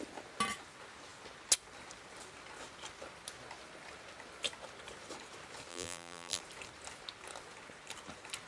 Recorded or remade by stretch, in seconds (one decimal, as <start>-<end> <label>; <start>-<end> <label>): 0.0-5.7 recorded; 5.7-6.4 remade; 6.4-8.5 recorded